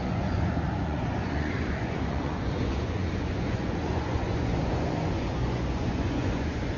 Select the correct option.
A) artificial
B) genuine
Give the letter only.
A